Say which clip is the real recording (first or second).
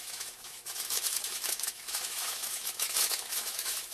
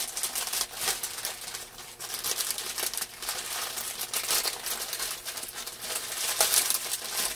second